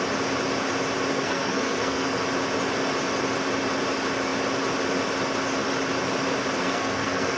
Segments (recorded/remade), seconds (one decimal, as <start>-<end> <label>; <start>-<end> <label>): 0.0-1.1 recorded; 1.1-2.2 remade; 2.2-6.6 recorded; 6.6-7.4 remade